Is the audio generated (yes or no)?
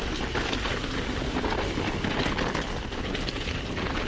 no